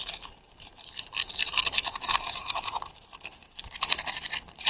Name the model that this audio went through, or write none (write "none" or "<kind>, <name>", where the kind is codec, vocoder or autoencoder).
vocoder, BigVGAN v2